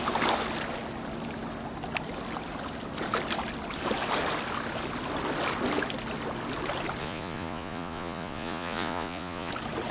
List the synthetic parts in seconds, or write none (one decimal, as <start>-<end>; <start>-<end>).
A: 7.0-9.5